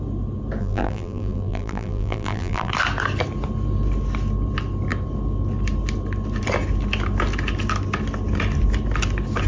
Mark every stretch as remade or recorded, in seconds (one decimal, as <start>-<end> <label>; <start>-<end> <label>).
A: 0.0-0.6 recorded; 0.6-2.7 remade; 2.7-9.5 recorded